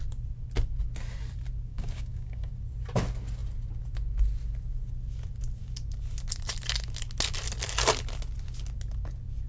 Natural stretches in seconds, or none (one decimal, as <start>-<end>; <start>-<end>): 0.0-1.7; 2.5-9.5